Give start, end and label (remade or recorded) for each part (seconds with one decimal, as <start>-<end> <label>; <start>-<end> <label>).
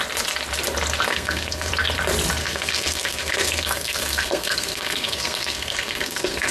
0.0-1.1 recorded; 1.1-1.7 remade; 1.7-2.4 recorded; 2.4-6.5 remade